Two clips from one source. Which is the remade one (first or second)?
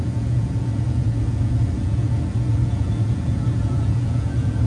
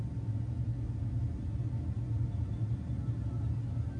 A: first